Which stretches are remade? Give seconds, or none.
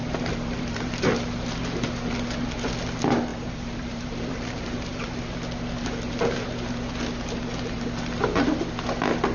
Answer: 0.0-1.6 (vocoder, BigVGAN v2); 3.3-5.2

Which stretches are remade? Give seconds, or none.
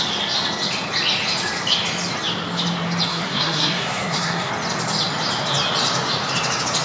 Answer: 3.1-4.5 (codec, SNAC)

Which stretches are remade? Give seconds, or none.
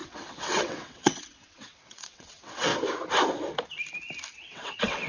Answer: 0.0-2.7 (vocoder, WaveNeXt); 4.3-5.1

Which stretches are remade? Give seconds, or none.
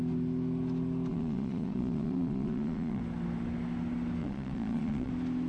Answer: 1.1-3.0 (vocoder, Vocos); 4.2-5.1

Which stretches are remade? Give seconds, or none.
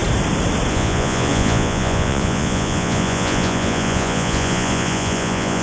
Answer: 0.7-5.6 (vocoder, Vocos)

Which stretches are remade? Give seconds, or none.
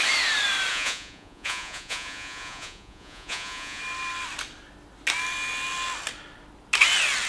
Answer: 0.7-3.8 (vocoder, Vocos)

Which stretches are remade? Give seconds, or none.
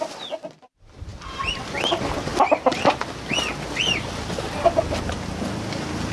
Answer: 1.1-1.6 (vocoder, BigVGAN v2); 2.3-4.7